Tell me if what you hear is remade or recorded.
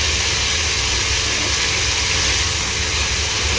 recorded